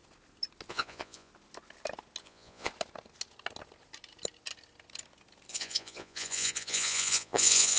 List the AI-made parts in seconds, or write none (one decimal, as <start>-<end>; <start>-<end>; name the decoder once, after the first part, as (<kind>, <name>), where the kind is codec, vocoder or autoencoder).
0.7-1.3 (vocoder, Vocos); 2.2-2.7; 5.5-7.8